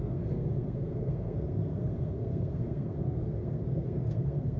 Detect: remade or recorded remade